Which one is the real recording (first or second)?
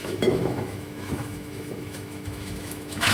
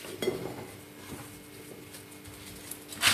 second